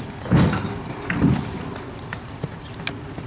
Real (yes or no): yes